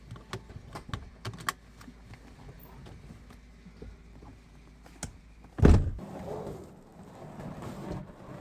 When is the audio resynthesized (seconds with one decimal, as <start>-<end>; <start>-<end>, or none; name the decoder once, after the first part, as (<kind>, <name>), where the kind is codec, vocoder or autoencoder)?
none